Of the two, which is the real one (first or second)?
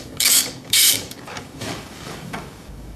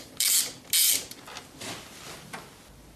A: second